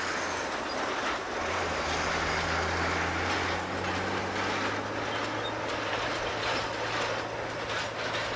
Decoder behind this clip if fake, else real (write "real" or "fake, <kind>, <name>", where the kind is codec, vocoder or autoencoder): real